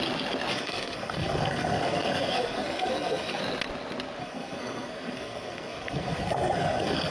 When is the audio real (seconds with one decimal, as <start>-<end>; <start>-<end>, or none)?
0.0-0.5; 3.4-4.2